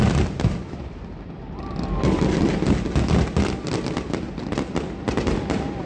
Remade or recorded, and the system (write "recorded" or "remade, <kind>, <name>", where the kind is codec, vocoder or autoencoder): recorded